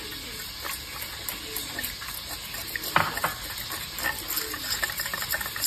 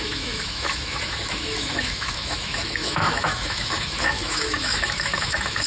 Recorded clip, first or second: first